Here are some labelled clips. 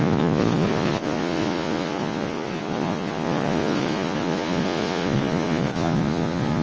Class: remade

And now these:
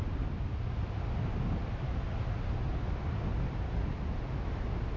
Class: recorded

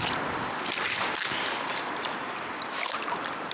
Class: recorded